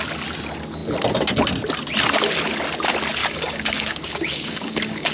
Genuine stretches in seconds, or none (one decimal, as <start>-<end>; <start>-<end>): 0.0-3.2